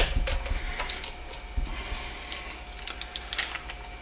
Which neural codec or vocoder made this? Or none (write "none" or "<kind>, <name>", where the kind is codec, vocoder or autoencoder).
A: none